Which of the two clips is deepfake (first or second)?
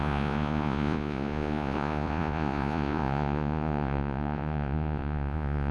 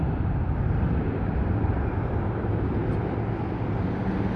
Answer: first